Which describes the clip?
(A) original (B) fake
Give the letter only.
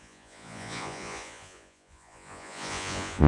B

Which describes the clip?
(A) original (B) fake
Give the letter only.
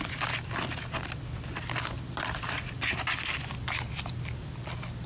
A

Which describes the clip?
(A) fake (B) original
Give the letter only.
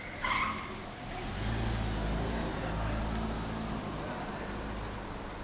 B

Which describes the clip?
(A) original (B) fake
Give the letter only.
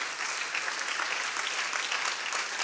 A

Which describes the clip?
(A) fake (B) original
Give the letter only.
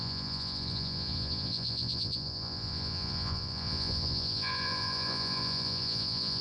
A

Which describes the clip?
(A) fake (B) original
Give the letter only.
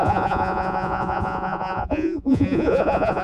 A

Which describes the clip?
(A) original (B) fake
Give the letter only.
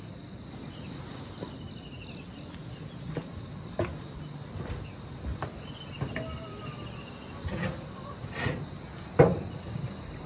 A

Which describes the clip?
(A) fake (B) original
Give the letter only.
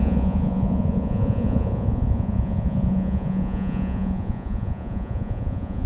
A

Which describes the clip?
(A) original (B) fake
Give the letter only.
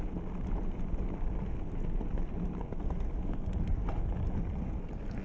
A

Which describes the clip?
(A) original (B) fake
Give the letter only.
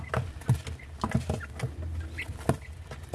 A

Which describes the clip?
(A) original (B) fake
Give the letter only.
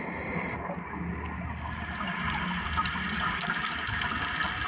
A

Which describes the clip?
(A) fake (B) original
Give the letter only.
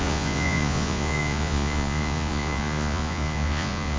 A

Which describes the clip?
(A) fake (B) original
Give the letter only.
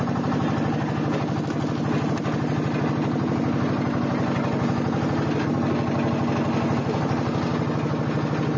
B